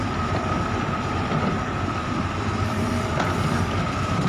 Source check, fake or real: fake